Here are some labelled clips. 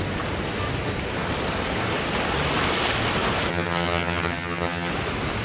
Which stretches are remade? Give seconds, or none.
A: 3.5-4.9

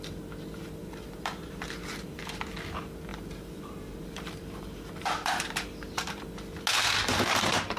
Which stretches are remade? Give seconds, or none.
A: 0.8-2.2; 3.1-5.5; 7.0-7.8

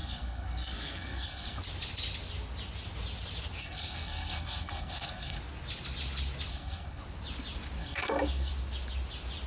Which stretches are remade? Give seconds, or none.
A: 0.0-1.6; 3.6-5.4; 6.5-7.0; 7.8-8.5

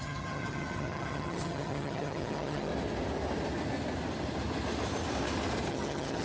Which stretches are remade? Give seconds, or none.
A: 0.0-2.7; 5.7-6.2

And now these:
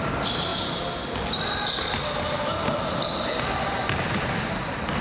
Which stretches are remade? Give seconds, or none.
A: none